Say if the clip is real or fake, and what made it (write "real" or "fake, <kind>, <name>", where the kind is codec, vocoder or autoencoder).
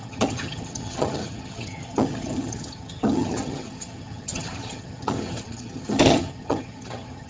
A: fake, vocoder, HiFi-GAN